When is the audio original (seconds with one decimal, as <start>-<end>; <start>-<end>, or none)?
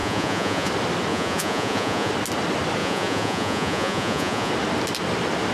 0.7-1.1; 2.1-2.8; 4.5-5.5